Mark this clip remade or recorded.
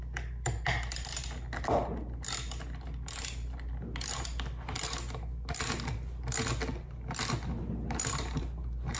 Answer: recorded